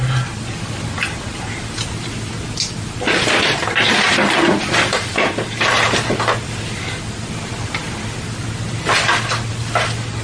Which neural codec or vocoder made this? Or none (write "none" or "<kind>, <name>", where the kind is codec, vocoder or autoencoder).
none